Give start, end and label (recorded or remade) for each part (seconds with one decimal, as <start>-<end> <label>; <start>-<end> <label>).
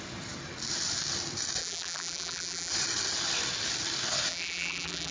0.0-1.6 recorded; 1.6-2.7 remade; 2.7-4.3 recorded; 4.3-5.1 remade